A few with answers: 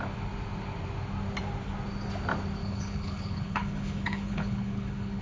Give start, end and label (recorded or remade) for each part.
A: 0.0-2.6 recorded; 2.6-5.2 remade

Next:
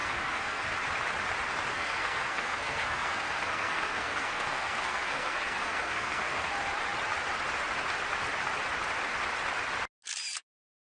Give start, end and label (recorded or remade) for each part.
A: 0.0-0.7 remade; 0.7-1.7 recorded; 1.7-6.5 remade; 6.5-10.8 recorded

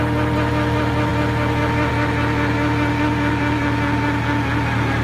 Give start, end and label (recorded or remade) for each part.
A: 0.0-5.0 recorded

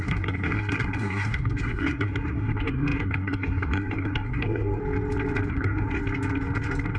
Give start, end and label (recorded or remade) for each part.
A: 0.0-4.8 remade; 4.8-5.5 recorded; 5.5-6.0 remade; 6.0-7.0 recorded